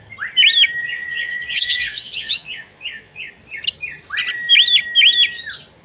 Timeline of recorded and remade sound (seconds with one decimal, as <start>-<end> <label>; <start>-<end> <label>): 0.0-0.8 recorded; 0.8-3.3 remade; 3.3-5.8 recorded